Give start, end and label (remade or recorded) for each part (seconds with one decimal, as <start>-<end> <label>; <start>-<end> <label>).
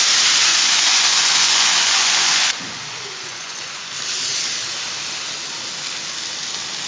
0.0-0.5 recorded; 0.5-3.9 remade; 3.9-6.9 recorded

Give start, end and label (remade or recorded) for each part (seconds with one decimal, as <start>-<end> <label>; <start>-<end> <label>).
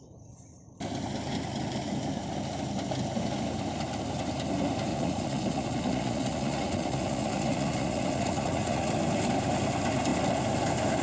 0.0-4.9 recorded; 4.9-8.9 remade; 8.9-11.0 recorded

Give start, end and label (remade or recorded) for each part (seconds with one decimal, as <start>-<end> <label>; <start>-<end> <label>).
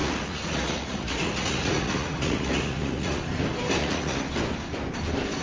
0.0-3.2 remade; 3.2-3.8 recorded; 3.8-4.3 remade; 4.3-5.4 recorded